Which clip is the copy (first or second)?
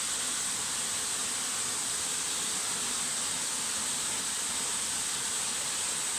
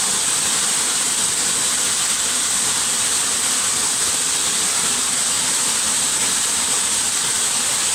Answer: second